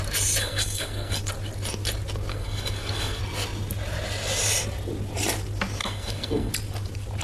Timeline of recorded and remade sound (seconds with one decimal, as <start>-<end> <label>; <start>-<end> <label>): 0.0-0.4 recorded; 0.4-1.2 remade; 1.2-2.3 recorded; 2.3-3.2 remade; 3.2-5.8 recorded; 5.8-6.5 remade; 6.5-7.2 recorded